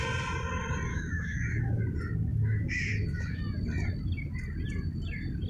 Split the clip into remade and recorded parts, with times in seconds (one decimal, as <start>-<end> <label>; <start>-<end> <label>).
0.0-0.9 recorded; 0.9-1.8 remade; 1.8-2.3 recorded; 2.3-3.4 remade; 3.4-5.5 recorded